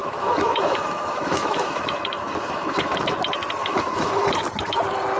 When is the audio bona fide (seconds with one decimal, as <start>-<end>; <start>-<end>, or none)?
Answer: 3.1-3.6; 4.3-5.2